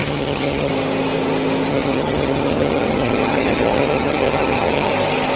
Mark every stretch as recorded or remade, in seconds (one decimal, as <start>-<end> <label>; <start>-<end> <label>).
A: 0.0-0.7 remade; 0.7-1.7 recorded; 1.7-4.9 remade; 4.9-5.4 recorded